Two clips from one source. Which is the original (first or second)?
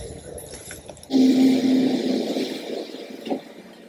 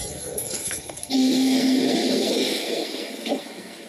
first